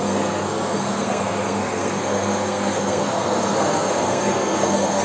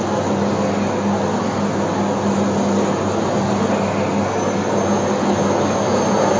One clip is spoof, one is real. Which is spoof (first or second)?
first